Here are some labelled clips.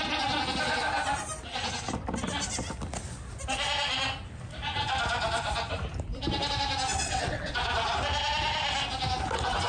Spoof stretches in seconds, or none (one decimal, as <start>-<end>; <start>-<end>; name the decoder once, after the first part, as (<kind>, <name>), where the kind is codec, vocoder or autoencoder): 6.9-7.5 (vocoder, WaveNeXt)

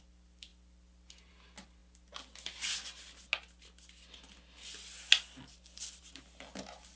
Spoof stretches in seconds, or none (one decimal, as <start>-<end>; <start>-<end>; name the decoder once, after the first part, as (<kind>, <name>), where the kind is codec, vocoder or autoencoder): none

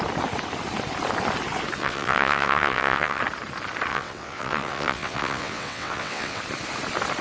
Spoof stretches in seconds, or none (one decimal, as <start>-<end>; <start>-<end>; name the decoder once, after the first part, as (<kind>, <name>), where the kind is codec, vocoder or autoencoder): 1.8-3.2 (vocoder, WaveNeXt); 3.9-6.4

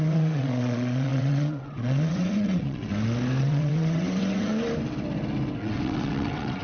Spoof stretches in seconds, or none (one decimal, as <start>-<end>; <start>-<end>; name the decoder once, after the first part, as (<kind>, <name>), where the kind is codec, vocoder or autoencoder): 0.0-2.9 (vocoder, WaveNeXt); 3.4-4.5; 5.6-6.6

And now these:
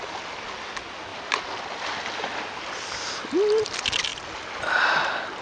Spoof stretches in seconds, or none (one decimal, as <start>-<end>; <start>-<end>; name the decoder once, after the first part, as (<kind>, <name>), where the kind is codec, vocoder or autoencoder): none